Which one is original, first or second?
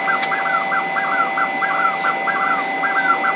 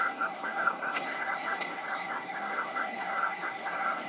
first